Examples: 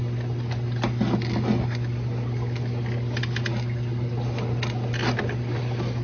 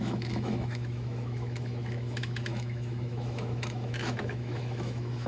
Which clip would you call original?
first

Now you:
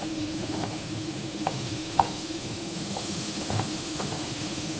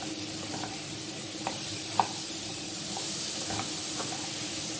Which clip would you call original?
second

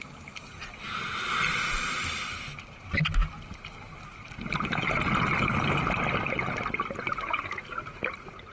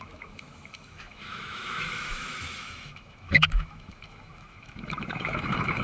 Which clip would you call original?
first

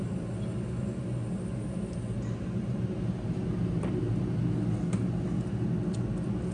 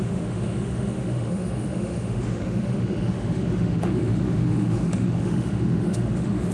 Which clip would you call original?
first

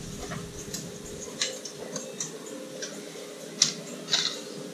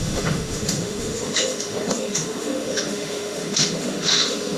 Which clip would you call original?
first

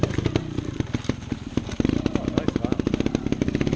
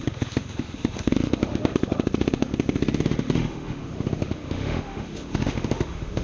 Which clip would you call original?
first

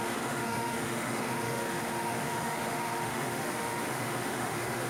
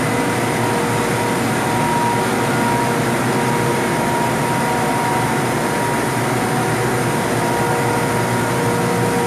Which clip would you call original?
second